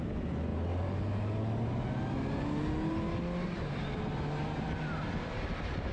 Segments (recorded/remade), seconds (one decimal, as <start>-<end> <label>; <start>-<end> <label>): 0.0-4.4 recorded; 4.4-5.9 remade